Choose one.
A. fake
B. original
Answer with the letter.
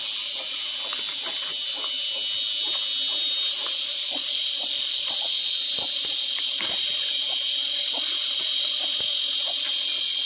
B